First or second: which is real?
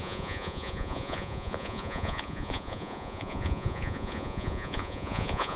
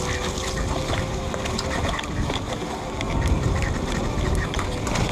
second